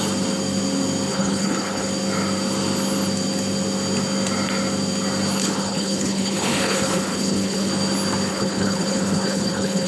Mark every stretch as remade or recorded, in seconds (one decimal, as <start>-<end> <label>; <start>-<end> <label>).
0.0-1.1 recorded; 1.1-1.9 remade; 1.9-5.4 recorded; 5.4-7.7 remade; 7.7-8.3 recorded; 8.3-9.9 remade